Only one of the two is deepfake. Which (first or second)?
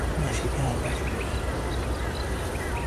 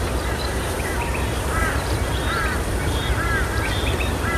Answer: second